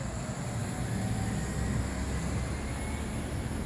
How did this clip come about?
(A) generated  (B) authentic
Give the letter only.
B